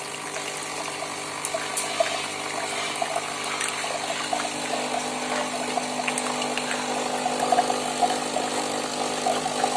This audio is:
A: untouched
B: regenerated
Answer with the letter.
A